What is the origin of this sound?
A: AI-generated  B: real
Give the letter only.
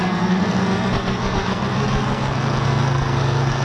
A